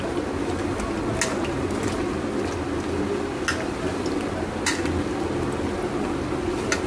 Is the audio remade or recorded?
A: recorded